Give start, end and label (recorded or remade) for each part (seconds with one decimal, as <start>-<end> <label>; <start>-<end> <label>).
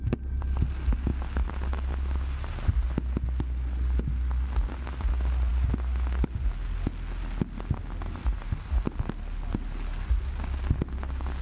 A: 0.0-11.4 recorded